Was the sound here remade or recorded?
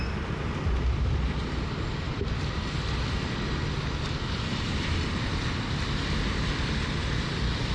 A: remade